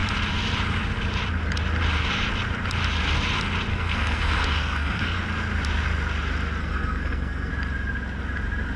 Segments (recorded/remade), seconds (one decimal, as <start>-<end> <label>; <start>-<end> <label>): 0.0-3.7 recorded; 3.7-5.2 remade; 5.2-6.6 recorded; 6.6-7.5 remade; 7.5-8.8 recorded